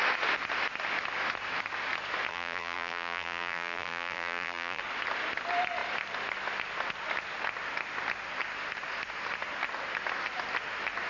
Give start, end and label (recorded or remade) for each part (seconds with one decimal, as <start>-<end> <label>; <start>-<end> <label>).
0.0-2.3 recorded; 2.3-4.8 remade; 4.8-11.1 recorded